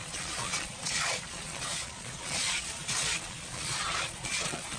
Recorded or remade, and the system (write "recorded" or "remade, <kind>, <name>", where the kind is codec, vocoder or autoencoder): remade, vocoder, Vocos